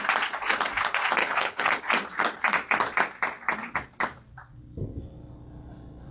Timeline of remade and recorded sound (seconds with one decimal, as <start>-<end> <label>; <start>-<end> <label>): 0.0-1.2 recorded; 1.2-1.8 remade; 1.8-6.1 recorded